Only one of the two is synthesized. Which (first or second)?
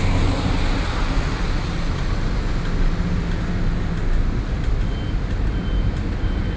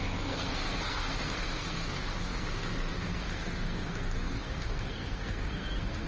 second